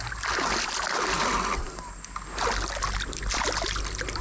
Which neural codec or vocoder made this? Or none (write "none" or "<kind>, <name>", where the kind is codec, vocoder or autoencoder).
none